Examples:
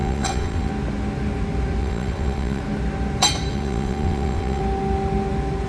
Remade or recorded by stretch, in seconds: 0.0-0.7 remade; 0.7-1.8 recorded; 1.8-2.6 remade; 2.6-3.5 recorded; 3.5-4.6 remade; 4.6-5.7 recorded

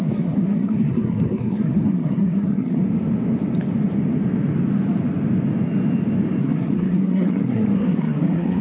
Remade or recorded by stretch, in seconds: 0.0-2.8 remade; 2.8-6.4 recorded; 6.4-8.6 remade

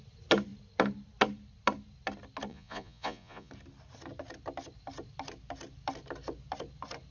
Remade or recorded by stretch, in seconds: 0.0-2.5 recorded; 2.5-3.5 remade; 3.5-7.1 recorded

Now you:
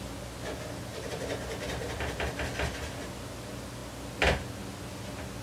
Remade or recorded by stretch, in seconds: 0.0-5.4 recorded

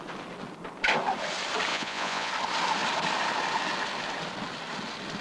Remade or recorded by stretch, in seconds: 0.0-1.7 recorded; 1.7-2.3 remade; 2.3-5.2 recorded

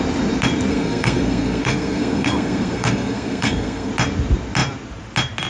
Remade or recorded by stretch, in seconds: 0.0-0.7 recorded; 0.7-3.9 remade; 3.9-5.5 recorded

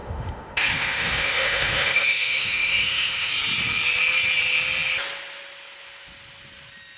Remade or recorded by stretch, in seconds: 0.0-3.3 remade; 3.3-7.0 recorded

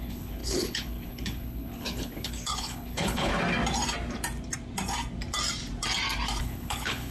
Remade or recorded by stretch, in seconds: 0.0-3.3 remade; 3.3-6.4 recorded; 6.4-7.1 remade